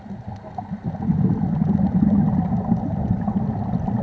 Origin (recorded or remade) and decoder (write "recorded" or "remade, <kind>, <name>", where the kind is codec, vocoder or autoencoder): recorded